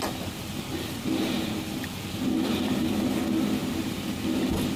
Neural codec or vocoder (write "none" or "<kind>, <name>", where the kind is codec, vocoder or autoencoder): none